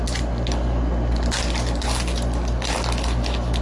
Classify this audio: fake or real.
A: real